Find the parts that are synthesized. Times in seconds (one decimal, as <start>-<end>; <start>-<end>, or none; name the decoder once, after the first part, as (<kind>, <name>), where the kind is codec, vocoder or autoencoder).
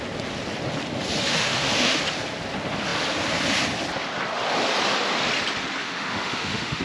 1.2-2.0 (autoencoder, DAC-VAE); 5.8-6.8